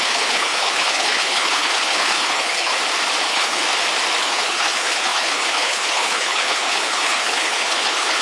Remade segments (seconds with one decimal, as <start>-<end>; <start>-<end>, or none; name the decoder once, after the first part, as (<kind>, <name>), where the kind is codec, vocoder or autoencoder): 0.0-2.7 (codec, HILCodec); 3.2-3.6; 4.2-8.2